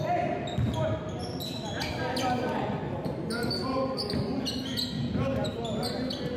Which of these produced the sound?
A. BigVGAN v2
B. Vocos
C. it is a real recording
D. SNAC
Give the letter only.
C